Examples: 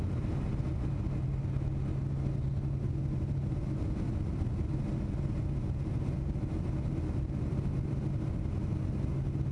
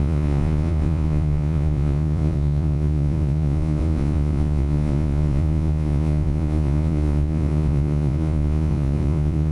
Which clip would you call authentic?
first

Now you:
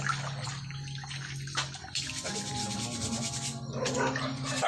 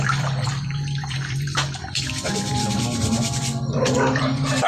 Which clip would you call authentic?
first